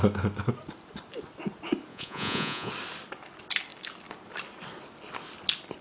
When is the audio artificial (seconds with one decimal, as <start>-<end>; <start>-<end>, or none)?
1.9-2.7